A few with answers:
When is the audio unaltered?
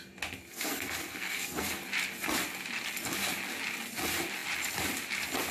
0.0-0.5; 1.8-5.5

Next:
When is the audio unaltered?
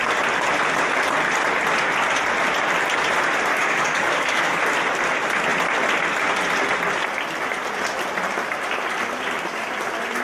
0.0-3.5; 4.6-10.2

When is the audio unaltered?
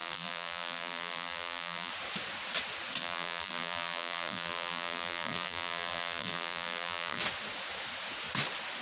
1.9-3.0; 7.2-8.8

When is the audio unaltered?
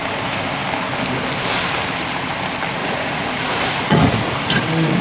0.0-2.8; 4.6-5.0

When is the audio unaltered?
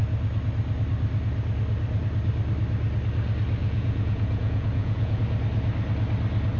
0.0-3.6; 5.2-6.6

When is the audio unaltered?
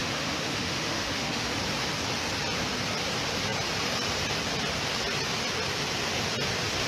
1.6-6.9